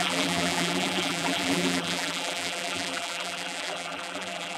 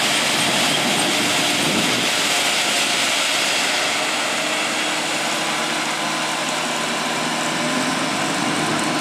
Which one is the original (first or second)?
second